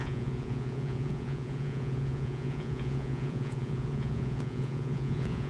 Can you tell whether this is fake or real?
fake